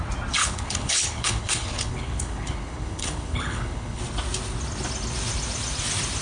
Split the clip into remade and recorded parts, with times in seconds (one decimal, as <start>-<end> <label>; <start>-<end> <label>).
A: 0.0-0.4 recorded; 0.4-4.0 remade; 4.0-6.2 recorded